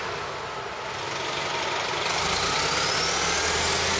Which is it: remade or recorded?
recorded